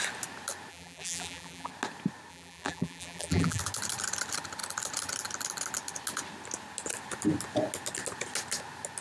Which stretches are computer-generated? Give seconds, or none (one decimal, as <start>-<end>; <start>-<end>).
0.7-1.7; 2.3-3.6